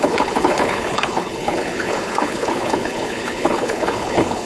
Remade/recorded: remade